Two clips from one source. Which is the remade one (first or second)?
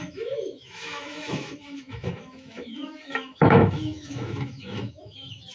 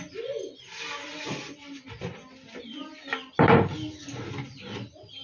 first